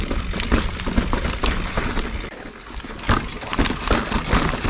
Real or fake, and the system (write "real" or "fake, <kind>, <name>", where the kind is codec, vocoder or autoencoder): real